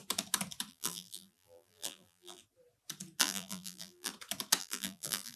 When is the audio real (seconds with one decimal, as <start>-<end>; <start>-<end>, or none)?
0.0-0.7; 2.4-3.2; 4.1-4.6